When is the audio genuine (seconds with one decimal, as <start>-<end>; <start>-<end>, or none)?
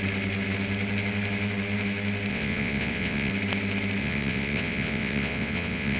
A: 0.0-2.3; 3.3-4.0